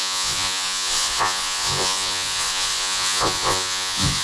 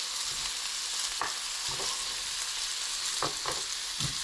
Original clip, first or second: second